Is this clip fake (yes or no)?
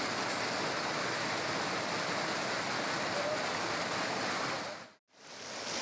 no